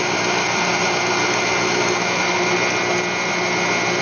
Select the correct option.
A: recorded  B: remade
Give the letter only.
A